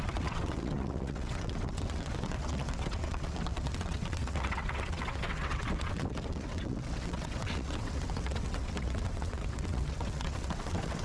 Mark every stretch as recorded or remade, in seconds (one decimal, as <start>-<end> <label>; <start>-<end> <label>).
0.0-11.0 remade